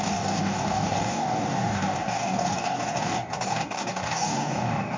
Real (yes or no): no